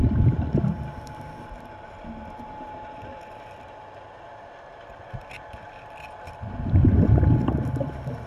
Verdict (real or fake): real